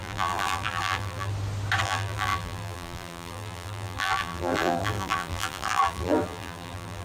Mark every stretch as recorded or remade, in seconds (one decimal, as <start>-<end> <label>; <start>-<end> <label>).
0.0-1.3 remade; 1.3-1.8 recorded; 1.8-7.0 remade